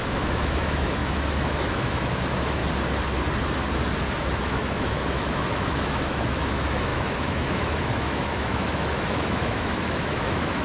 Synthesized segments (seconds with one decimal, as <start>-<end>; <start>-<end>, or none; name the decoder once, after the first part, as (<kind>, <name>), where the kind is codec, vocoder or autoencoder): 0.0-2.6 (autoencoder, DAC-VAE); 4.2-10.6